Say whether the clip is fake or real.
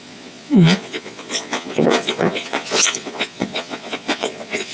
fake